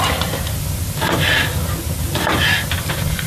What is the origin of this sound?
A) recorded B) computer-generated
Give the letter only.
A